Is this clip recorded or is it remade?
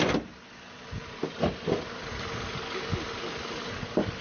recorded